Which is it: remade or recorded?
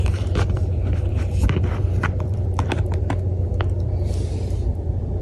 remade